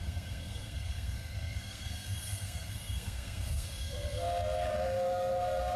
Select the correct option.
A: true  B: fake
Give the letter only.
B